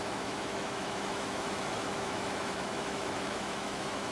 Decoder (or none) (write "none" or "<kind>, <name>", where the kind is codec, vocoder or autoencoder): autoencoder, DAC-VAE